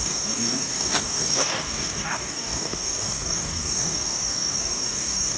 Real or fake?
fake